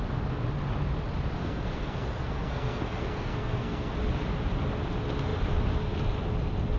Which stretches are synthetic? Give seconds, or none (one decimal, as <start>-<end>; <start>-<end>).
1.4-3.9